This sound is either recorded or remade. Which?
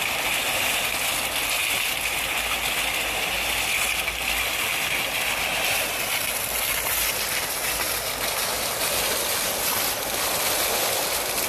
recorded